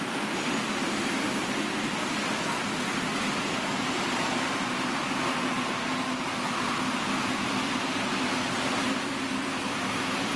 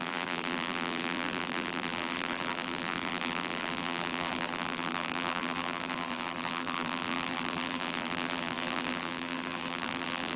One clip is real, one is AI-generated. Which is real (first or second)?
first